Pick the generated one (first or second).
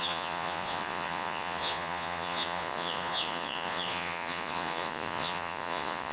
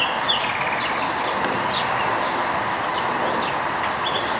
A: first